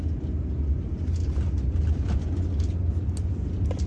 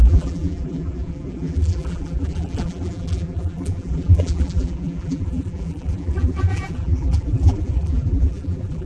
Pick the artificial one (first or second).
second